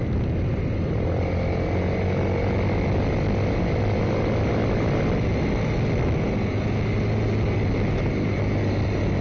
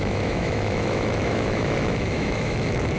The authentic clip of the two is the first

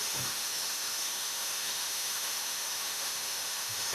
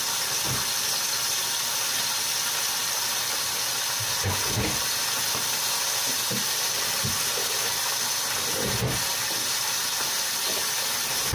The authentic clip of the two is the second